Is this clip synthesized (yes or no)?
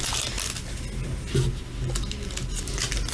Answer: no